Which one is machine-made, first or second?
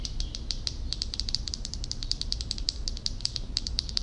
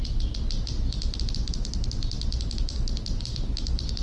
first